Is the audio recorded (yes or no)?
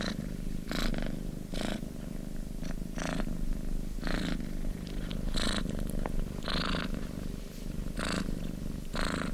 yes